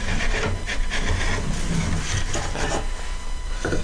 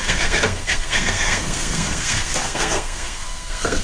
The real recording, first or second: first